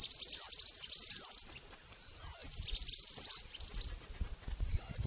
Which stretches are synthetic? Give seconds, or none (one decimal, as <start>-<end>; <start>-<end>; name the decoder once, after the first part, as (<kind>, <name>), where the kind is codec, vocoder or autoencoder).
none